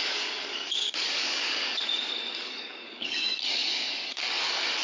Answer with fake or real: fake